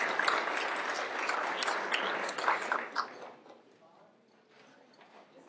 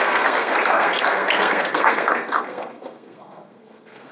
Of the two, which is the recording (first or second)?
first